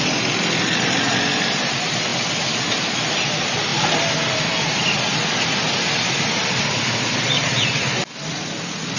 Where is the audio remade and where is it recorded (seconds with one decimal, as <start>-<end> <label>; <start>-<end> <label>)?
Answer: 0.0-2.1 remade; 2.1-2.7 recorded; 2.7-3.7 remade; 3.7-6.5 recorded; 6.5-9.0 remade